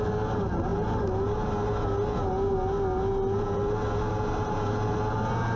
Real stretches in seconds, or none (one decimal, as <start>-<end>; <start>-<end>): 0.0-5.6